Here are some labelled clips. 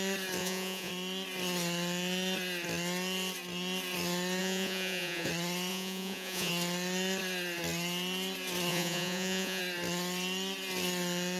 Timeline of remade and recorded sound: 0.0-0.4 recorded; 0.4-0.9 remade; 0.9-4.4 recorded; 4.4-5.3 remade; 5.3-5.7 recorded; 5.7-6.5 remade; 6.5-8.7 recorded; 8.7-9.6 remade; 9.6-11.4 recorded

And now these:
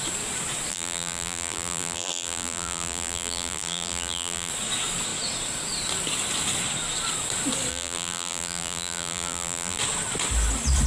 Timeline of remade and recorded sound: 0.0-0.7 recorded; 0.7-4.5 remade; 4.5-7.7 recorded; 7.7-9.8 remade; 9.8-10.9 recorded

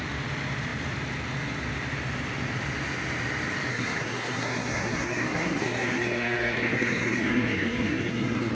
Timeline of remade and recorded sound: 0.0-3.7 recorded; 3.7-8.5 remade

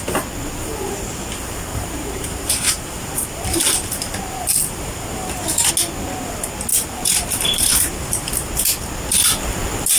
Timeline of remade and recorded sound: 0.0-1.7 recorded; 1.7-5.7 remade; 5.7-6.7 recorded; 6.7-8.3 remade; 8.3-10.0 recorded

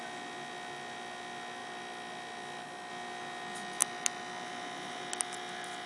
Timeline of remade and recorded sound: 0.0-1.6 recorded; 1.6-2.9 remade; 2.9-3.8 recorded; 3.8-5.9 remade